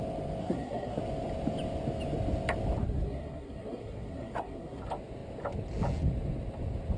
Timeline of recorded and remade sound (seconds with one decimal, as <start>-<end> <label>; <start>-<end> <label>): 0.0-0.4 recorded; 0.4-1.0 remade; 1.0-2.8 recorded; 2.8-4.8 remade; 4.8-7.0 recorded